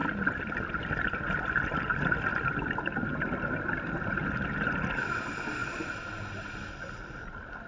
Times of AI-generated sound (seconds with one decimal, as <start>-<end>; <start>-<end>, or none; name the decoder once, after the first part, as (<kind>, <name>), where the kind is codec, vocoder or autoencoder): 0.0-4.5 (vocoder, BigVGAN v2); 5.6-7.7